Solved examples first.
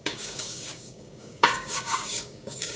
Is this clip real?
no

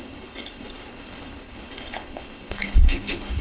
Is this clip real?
no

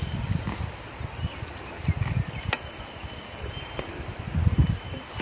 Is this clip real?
yes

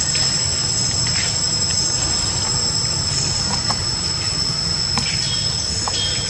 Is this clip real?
yes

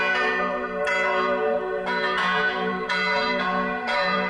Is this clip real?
no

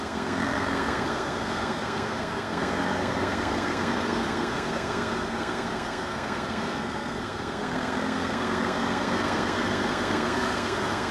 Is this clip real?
no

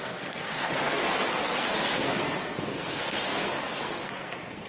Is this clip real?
no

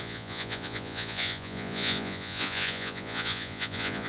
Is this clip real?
no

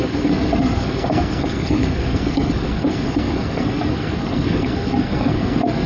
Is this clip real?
no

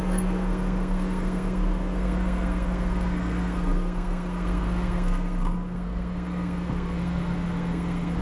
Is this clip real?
no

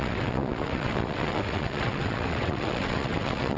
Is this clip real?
no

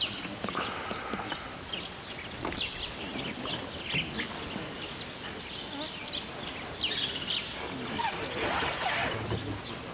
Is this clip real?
yes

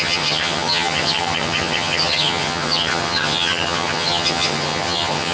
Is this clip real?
no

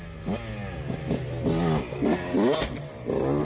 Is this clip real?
yes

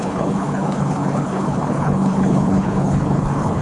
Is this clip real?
no